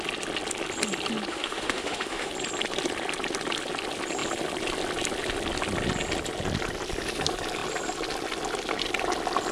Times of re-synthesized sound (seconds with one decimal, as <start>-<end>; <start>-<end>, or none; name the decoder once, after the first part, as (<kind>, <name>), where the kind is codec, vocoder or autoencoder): 1.3-2.3 (autoencoder, DAC-VAE)